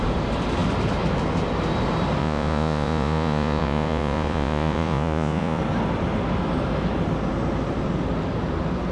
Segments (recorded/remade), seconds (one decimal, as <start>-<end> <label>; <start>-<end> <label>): 0.0-2.2 recorded; 2.2-5.6 remade; 5.6-8.9 recorded